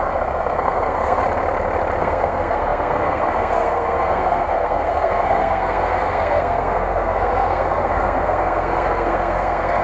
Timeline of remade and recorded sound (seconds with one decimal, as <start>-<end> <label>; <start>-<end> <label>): 0.0-1.2 remade; 1.2-2.0 recorded; 2.0-9.8 remade